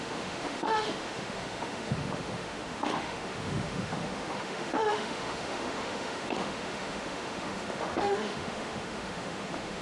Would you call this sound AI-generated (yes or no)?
yes